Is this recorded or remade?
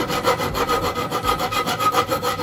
remade